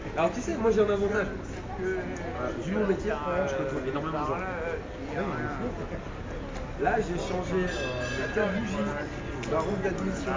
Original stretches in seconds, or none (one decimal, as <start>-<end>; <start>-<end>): 0.0-10.4